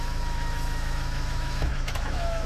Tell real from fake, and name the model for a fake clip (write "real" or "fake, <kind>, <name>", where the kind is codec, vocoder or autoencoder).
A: fake, autoencoder, DAC-VAE